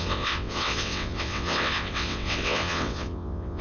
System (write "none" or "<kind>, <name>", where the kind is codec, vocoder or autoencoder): vocoder, WaveNeXt